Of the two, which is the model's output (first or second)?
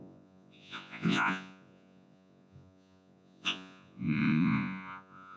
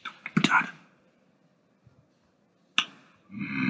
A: first